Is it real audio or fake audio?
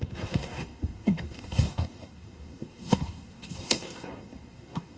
fake